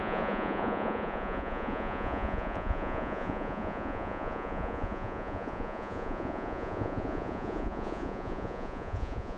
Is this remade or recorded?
remade